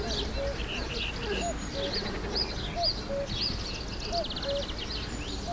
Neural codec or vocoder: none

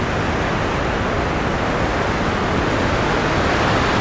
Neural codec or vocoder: none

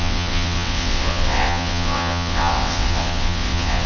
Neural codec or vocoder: vocoder, WaveNeXt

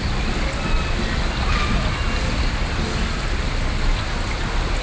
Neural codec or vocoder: none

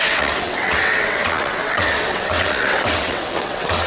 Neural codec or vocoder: vocoder, WaveNeXt